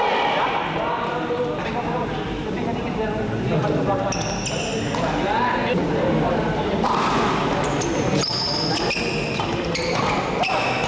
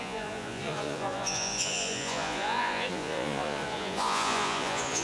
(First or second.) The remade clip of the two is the second